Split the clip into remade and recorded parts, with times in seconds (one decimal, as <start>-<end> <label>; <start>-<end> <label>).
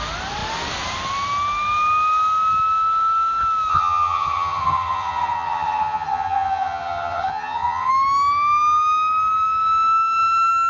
0.0-3.7 recorded; 3.7-7.9 remade; 7.9-10.7 recorded